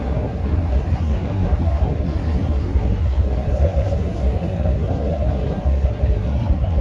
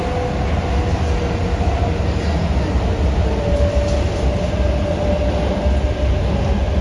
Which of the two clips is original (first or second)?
second